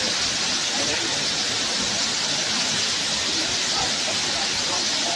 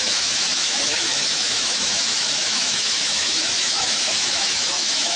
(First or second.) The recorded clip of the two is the first